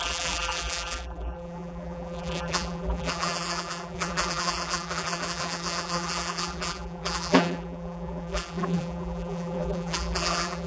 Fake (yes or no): yes